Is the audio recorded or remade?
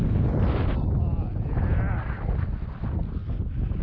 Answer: recorded